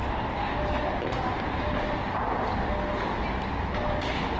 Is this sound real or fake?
real